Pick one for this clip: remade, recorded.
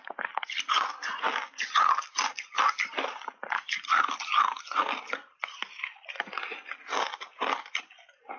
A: recorded